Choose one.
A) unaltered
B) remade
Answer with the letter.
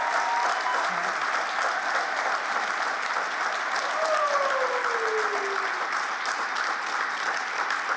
A